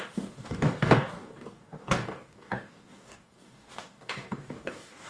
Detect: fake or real fake